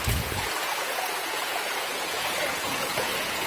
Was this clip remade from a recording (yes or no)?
yes